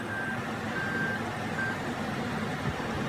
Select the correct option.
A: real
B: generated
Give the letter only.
A